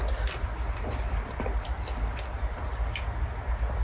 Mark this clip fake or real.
real